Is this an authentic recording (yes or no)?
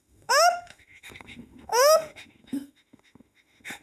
no